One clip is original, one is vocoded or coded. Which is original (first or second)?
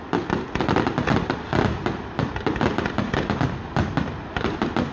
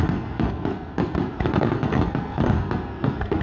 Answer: first